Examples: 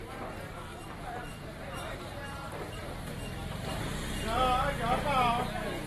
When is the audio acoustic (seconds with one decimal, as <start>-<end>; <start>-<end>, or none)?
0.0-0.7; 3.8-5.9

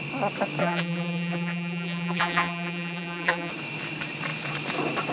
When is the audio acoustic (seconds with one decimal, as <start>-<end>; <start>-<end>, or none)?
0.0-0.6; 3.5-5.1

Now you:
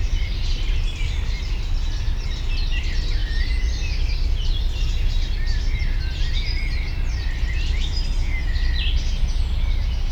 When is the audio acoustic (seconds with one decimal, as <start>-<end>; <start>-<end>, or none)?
0.0-10.1